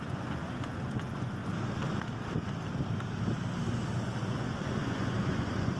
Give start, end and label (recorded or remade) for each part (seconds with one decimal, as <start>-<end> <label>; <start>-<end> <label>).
0.0-1.4 remade; 1.4-4.0 recorded; 4.0-5.8 remade